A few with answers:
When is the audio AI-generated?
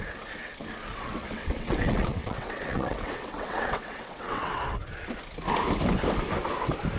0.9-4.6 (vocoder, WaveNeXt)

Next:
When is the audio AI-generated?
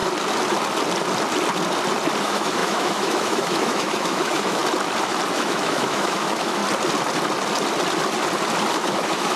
2.2-4.6 (autoencoder, DAC-VAE); 5.3-6.6; 8.7-9.4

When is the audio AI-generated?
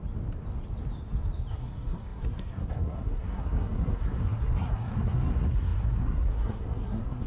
1.5-7.3 (codec, SNAC)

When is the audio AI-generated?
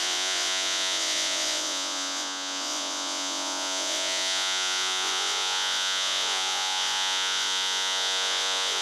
0.0-8.8 (vocoder, Vocos)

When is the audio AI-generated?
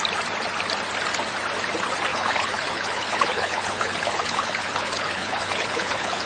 2.1-6.3 (codec, HILCodec)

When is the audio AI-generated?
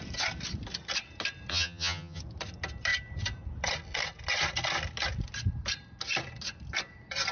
1.5-2.2 (vocoder, HiFi-GAN)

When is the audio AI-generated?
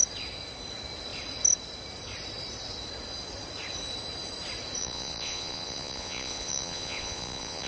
4.8-7.7 (vocoder, Vocos)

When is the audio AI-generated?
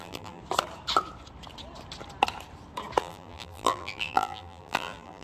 0.0-0.4 (vocoder, BigVGAN v2); 3.0-5.2